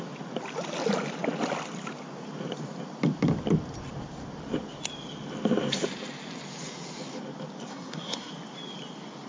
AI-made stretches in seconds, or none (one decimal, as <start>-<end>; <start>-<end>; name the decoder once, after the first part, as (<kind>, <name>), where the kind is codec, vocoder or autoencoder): 7.7-8.3 (codec, SNAC)